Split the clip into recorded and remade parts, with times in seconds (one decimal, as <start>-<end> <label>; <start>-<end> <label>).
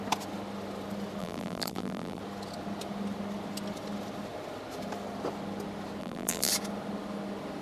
0.0-1.2 recorded; 1.2-2.2 remade; 2.2-6.0 recorded; 6.0-6.5 remade; 6.5-7.6 recorded